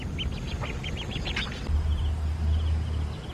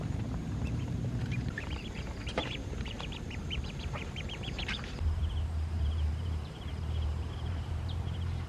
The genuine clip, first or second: first